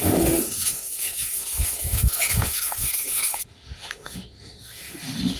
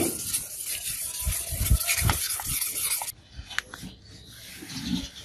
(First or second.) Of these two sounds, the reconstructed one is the first